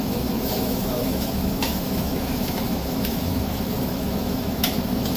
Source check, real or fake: fake